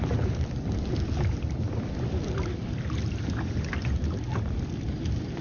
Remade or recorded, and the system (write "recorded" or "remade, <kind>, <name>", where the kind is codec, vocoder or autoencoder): recorded